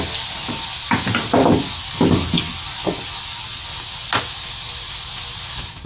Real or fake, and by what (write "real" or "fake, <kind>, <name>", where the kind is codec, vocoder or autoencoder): real